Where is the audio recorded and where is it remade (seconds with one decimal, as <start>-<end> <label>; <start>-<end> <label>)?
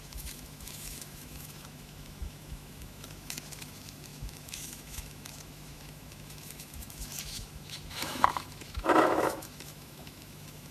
0.0-10.7 remade